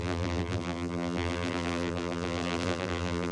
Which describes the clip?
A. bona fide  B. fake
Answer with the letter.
B